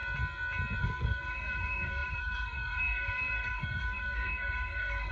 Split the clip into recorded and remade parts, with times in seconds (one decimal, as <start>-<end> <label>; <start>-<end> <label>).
0.0-0.8 recorded; 0.8-5.1 remade